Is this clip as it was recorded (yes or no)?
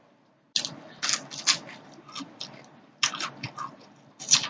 yes